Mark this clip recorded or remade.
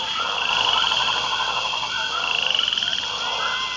recorded